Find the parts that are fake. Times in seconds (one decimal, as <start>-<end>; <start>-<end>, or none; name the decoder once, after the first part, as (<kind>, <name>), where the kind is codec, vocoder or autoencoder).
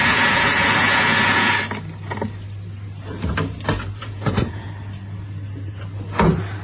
0.0-1.5 (vocoder, Vocos); 4.0-4.7